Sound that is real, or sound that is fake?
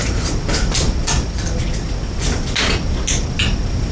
real